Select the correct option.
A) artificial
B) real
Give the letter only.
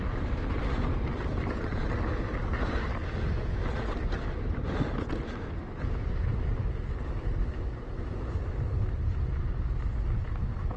B